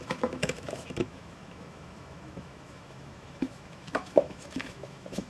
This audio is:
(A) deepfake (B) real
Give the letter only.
A